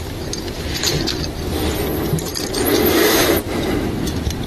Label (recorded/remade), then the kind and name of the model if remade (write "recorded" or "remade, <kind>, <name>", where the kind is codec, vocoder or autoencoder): recorded